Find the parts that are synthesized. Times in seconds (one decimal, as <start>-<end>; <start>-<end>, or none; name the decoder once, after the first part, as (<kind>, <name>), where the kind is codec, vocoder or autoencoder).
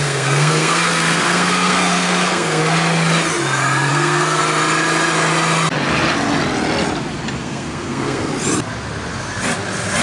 0.0-2.6 (codec, SNAC); 3.9-4.4; 7.4-8.3